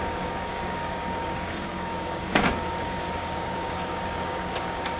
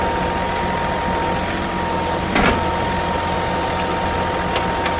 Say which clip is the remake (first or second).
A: first